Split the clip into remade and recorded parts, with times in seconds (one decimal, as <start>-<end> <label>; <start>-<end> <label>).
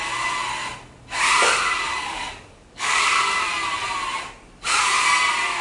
0.0-1.9 recorded; 1.9-3.4 remade; 3.4-5.6 recorded